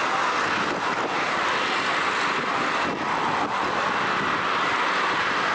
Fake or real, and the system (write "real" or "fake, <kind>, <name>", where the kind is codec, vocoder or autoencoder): real